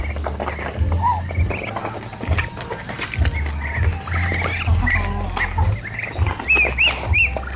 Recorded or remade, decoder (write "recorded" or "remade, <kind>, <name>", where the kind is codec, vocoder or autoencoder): recorded